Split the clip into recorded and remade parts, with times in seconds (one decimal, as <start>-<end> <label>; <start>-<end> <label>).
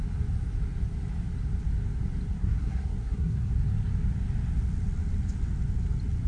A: 0.0-2.3 recorded; 2.3-3.5 remade; 3.5-6.3 recorded